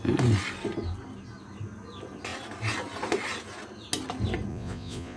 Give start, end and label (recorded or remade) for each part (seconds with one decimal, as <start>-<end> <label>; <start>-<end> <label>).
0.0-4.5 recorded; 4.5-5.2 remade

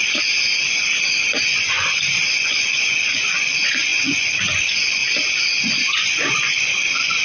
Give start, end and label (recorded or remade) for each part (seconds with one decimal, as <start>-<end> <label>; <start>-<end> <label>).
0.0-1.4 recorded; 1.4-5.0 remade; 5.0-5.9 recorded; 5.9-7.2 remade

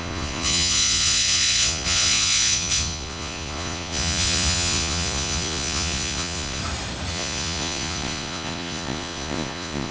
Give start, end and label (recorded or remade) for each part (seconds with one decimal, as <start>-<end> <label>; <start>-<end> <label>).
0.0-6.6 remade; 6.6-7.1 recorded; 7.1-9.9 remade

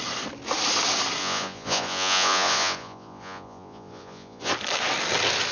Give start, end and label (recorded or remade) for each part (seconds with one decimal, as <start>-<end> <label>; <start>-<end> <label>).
0.0-1.2 recorded; 1.2-4.5 remade; 4.5-5.5 recorded

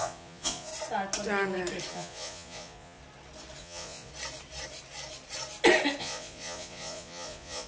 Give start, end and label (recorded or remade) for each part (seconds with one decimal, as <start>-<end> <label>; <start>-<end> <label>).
0.0-0.7 remade; 0.7-1.9 recorded; 1.9-3.0 remade; 3.0-3.6 recorded; 3.6-4.1 remade; 4.1-6.0 recorded; 6.0-7.7 remade